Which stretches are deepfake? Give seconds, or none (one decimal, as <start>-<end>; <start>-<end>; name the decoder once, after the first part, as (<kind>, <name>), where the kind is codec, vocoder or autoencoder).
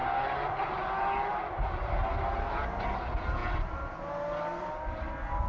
none